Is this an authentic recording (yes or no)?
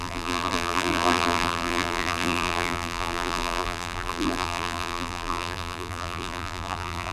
no